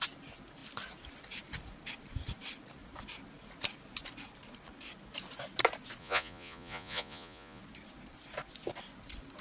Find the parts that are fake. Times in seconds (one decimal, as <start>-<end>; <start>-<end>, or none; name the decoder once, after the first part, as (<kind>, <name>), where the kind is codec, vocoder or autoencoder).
6.0-7.6 (vocoder, Vocos)